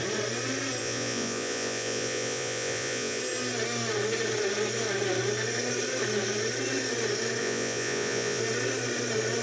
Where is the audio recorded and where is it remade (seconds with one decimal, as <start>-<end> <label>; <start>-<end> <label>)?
0.0-0.8 recorded; 0.8-3.2 remade; 3.2-7.4 recorded; 7.4-8.4 remade; 8.4-9.4 recorded